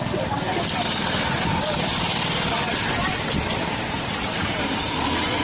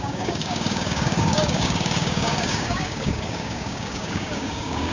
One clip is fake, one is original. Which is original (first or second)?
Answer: first